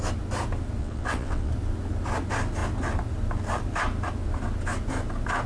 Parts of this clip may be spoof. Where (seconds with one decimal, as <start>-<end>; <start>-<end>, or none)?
0.8-1.5